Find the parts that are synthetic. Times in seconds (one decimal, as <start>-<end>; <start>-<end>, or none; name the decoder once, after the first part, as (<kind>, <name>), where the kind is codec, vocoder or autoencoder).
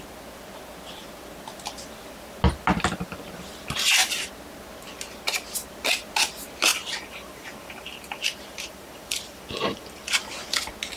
6.7-10.2 (vocoder, BigVGAN v2)